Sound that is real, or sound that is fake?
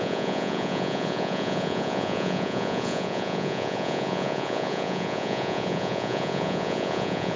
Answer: fake